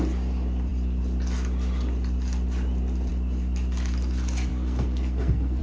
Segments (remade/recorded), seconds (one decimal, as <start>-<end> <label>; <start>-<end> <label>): 0.0-4.5 recorded; 4.5-5.6 remade